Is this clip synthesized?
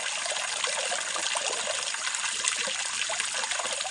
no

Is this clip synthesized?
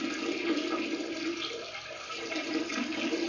no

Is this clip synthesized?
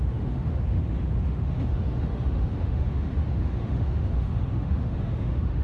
yes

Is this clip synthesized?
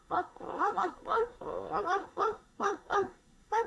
yes